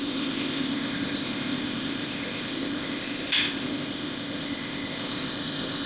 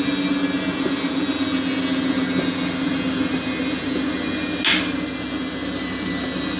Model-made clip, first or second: first